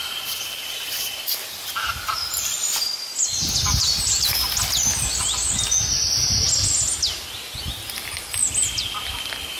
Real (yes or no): yes